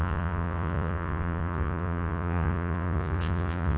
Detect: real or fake fake